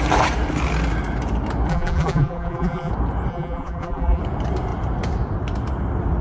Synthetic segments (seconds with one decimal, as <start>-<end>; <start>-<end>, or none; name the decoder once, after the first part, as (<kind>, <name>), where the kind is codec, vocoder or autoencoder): 1.7-2.9 (vocoder, BigVGAN v2); 3.3-4.2